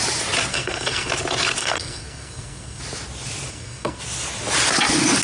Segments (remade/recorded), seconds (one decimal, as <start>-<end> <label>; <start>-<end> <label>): 0.0-0.5 recorded; 0.5-1.1 remade; 1.1-1.6 recorded; 1.6-2.8 remade; 2.8-3.5 recorded; 3.5-4.0 remade; 4.0-5.2 recorded